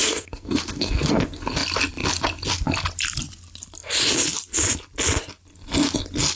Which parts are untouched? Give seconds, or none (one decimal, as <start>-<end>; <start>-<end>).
1.4-6.4